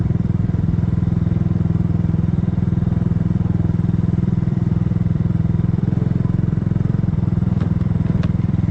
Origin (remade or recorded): remade